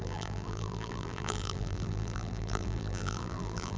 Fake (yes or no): yes